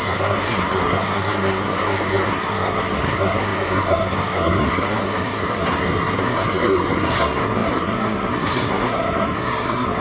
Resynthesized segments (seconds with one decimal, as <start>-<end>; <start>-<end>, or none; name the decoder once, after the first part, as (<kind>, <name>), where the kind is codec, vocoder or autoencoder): 0.0-10.0 (codec, SNAC)